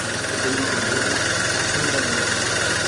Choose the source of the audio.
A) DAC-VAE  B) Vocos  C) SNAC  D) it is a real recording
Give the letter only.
D